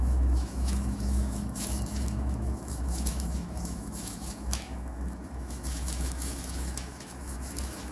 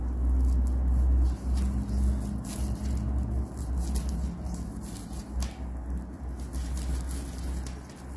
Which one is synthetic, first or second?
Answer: first